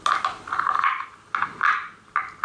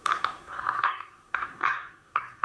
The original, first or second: first